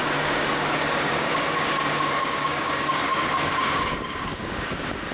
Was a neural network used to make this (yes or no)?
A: yes